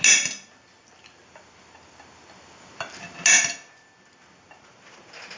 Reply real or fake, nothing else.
real